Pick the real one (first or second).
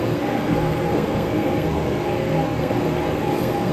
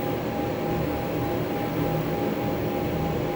second